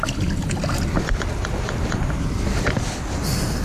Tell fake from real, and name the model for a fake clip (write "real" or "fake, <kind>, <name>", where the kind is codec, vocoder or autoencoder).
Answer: real